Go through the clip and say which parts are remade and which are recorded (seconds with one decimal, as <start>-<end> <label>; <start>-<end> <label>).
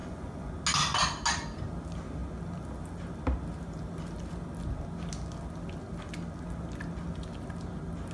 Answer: 0.0-0.5 remade; 0.5-8.1 recorded